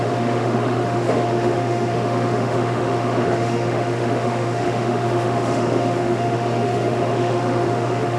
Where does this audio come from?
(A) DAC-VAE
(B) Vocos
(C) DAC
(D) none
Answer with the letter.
A